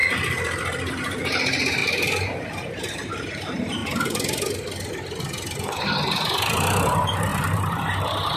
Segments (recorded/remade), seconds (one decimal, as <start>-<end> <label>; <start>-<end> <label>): 0.0-0.9 recorded; 0.9-1.8 remade; 1.8-2.8 recorded; 2.8-3.8 remade; 3.8-6.6 recorded; 6.6-8.4 remade